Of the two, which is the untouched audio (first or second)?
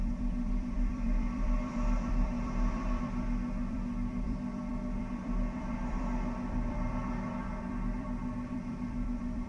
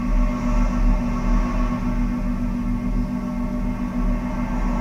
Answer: second